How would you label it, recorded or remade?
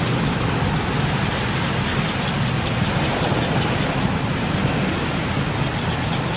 recorded